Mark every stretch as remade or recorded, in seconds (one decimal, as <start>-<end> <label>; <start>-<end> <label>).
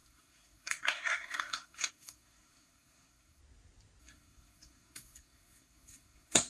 0.0-3.4 remade; 3.4-4.0 recorded; 4.0-6.5 remade